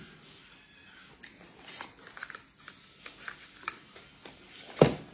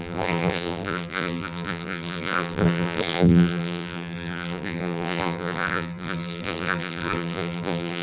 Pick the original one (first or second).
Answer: first